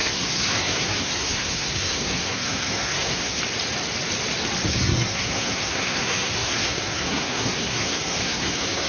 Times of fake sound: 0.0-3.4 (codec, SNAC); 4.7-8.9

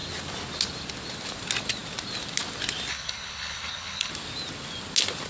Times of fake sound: 2.9-4.1 (codec, HILCodec)

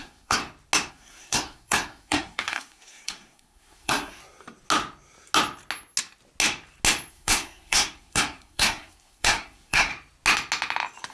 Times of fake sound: 0.0-0.4 (codec, SNAC); 0.9-4.2; 7.1-9.9